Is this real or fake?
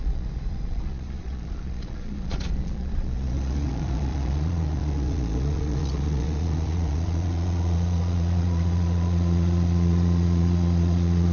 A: fake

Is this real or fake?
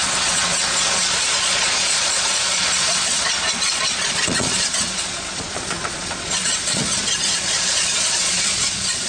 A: fake